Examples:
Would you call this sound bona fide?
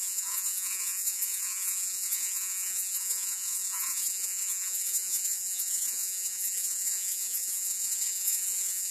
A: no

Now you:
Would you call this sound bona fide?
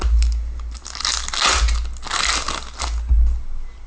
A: yes